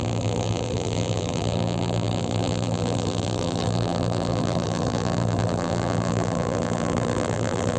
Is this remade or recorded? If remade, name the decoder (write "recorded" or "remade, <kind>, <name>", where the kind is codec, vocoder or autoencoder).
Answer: remade, vocoder, BigVGAN v2